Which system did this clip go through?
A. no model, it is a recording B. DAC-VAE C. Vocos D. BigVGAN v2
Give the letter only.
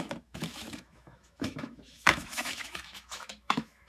B